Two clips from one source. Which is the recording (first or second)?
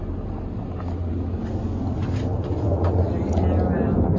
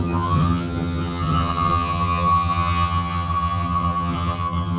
first